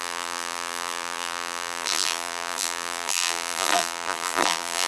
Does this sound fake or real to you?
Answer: fake